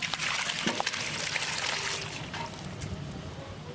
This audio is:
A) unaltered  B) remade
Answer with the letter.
A